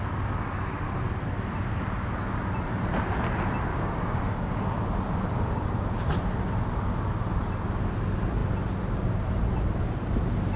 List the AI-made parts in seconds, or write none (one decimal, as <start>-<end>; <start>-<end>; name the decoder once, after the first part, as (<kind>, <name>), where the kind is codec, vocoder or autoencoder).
3.7-4.6 (codec, DAC)